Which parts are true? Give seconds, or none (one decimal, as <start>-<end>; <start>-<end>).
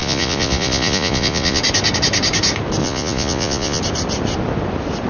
1.6-2.8; 3.8-5.1